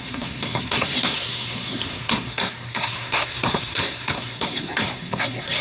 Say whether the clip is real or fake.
fake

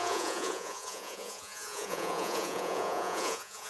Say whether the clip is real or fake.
fake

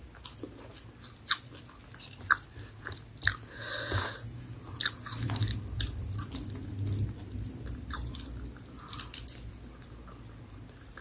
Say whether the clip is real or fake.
real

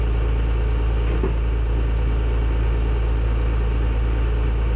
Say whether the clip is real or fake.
real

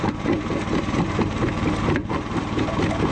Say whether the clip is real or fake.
fake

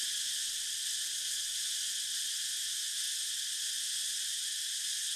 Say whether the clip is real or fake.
fake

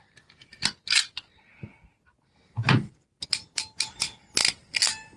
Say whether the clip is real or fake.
real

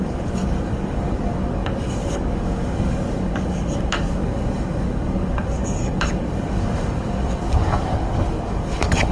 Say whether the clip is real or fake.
fake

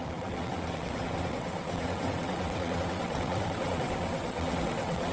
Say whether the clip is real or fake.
fake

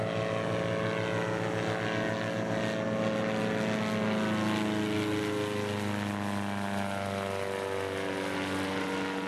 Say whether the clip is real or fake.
real